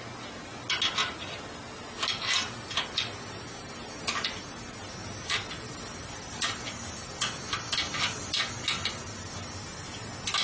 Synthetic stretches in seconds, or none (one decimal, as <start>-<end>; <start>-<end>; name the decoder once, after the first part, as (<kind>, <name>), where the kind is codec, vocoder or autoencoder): 1.0-2.0 (vocoder, BigVGAN v2); 5.0-7.1; 7.8-8.4